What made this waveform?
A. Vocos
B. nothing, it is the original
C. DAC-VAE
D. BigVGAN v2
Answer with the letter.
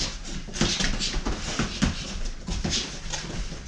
B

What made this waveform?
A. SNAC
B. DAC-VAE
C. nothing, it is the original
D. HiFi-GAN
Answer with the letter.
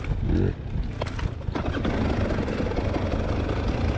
C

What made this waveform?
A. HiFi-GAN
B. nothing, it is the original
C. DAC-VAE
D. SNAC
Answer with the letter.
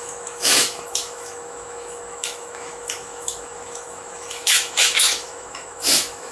C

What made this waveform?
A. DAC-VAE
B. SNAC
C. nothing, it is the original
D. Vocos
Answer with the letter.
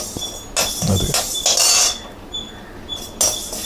C